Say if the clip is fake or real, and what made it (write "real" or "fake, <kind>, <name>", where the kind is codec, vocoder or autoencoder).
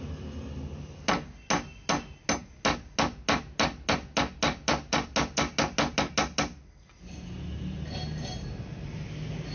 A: real